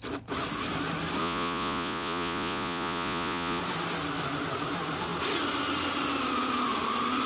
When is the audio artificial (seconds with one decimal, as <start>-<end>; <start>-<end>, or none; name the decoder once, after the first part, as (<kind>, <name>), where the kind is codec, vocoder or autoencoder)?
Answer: 1.2-3.6 (vocoder, Vocos)